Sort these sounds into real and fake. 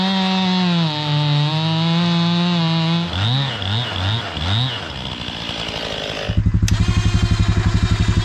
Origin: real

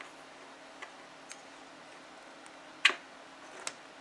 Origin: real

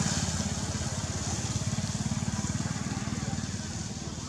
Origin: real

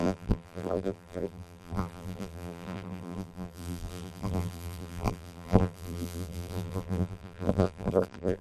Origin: fake